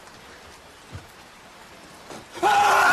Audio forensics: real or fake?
real